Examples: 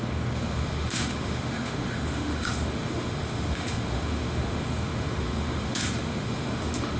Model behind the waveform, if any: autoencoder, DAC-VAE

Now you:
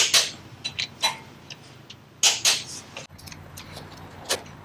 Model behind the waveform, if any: none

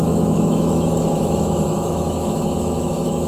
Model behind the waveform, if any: autoencoder, DAC-VAE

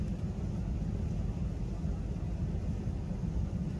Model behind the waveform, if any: none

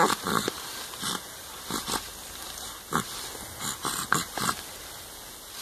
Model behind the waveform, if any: none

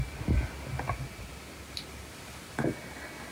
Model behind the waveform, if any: none